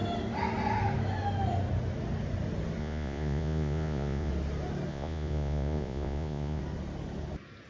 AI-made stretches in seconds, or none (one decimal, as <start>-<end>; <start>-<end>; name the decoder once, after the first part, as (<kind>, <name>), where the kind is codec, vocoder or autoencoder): 2.8-4.3 (vocoder, Vocos); 4.9-6.6